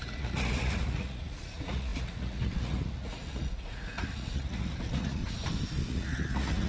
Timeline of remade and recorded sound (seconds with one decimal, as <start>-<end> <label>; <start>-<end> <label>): 0.0-5.2 remade; 5.2-5.9 recorded; 5.9-6.7 remade